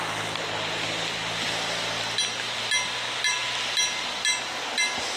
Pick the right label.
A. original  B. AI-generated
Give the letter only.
A